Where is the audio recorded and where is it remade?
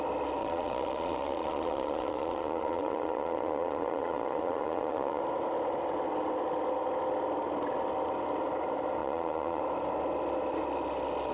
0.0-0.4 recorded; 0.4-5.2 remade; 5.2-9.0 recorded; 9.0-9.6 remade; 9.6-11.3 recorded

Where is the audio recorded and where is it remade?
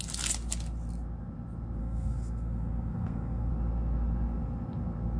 0.0-1.8 recorded; 1.8-3.5 remade; 3.5-5.2 recorded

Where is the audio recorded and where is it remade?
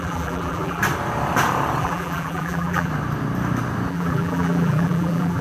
0.0-0.8 remade; 0.8-1.8 recorded; 1.8-2.9 remade; 2.9-3.9 recorded; 3.9-5.4 remade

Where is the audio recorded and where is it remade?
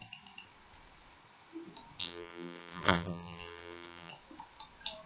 0.0-2.0 recorded; 2.0-4.1 remade; 4.1-5.1 recorded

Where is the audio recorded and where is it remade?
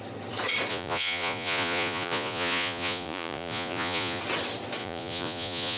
0.0-0.7 recorded; 0.7-4.2 remade; 4.2-4.8 recorded; 4.8-5.8 remade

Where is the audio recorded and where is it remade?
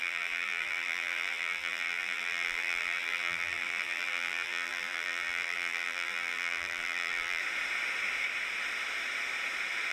0.0-7.4 remade; 7.4-9.9 recorded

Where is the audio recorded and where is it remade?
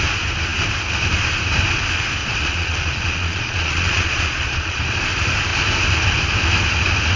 0.0-2.2 recorded; 2.2-4.8 remade; 4.8-7.2 recorded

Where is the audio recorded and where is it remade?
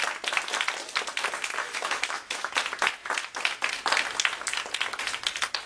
0.0-1.6 recorded; 1.6-2.5 remade; 2.5-5.7 recorded